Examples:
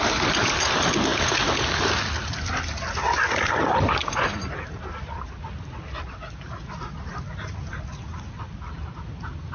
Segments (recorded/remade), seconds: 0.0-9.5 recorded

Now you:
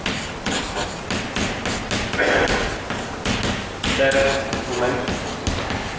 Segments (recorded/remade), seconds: 0.0-6.0 recorded

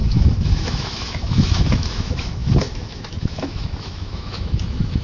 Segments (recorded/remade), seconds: 0.0-5.0 remade

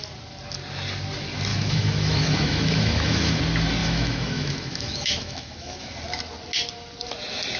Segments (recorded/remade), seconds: 0.0-1.5 recorded; 1.5-3.4 remade; 3.4-3.8 recorded; 3.8-5.9 remade; 5.9-7.6 recorded

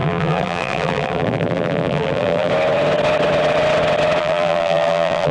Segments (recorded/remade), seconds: 0.0-2.5 remade; 2.5-4.2 recorded; 4.2-5.3 remade

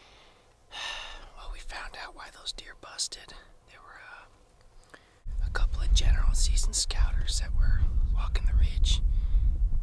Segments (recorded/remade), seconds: 0.0-9.8 recorded

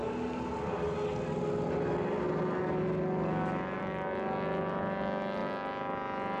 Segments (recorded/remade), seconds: 0.0-6.4 recorded

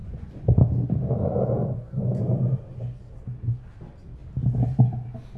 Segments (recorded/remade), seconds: 0.0-0.6 remade; 0.6-1.6 recorded; 1.6-2.2 remade; 2.2-5.4 recorded